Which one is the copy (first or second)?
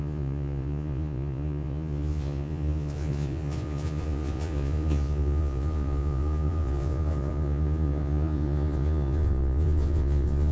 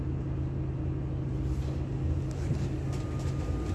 first